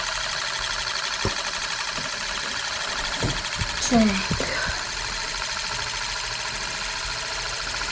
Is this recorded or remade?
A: recorded